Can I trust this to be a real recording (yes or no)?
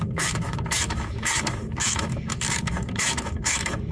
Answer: no